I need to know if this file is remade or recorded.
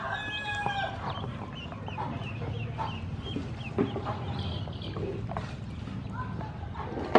recorded